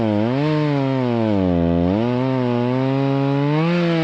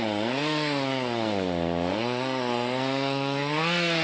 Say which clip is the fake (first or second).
second